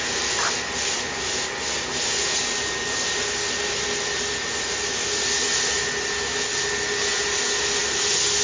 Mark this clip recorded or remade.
recorded